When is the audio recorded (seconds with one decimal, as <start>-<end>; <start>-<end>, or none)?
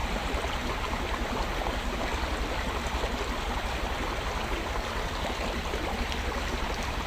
0.7-7.1